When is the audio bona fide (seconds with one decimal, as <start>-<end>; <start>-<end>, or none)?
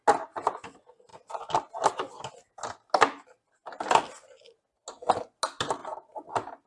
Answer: 0.0-6.7